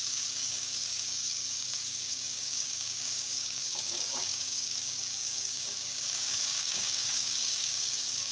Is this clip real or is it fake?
fake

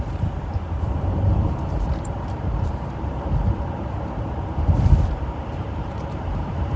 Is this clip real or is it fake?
fake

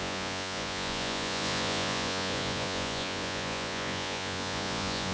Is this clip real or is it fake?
fake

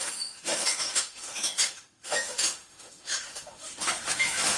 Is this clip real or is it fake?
fake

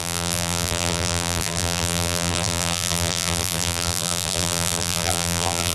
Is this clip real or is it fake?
fake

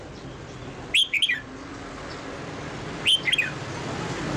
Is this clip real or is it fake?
real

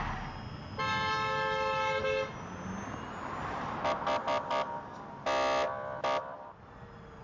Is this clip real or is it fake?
real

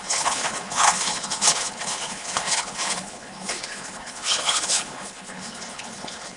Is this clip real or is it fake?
fake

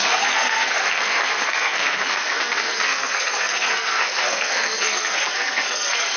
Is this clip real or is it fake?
fake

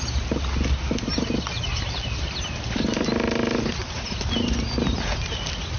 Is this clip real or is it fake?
real